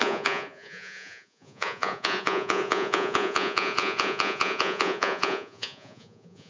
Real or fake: fake